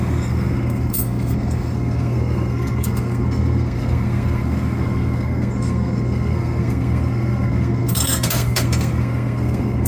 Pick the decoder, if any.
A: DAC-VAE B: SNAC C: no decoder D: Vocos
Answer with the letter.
B